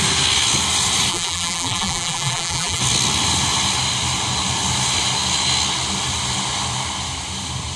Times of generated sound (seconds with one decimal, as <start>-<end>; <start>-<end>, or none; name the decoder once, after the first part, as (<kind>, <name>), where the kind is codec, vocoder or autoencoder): 1.1-2.8 (vocoder, BigVGAN v2)